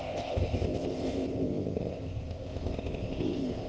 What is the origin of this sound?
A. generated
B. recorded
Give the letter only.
A